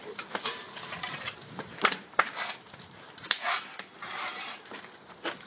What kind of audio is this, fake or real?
fake